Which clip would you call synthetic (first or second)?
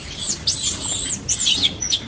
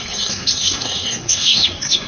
second